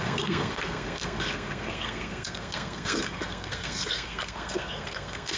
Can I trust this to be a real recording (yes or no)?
no